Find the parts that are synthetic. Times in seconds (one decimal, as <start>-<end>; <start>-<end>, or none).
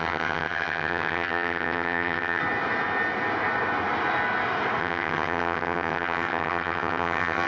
0.0-2.4; 4.8-7.5